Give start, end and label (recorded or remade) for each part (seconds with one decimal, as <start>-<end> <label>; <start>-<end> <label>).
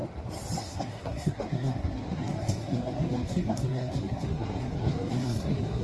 0.0-0.6 recorded; 0.6-5.8 remade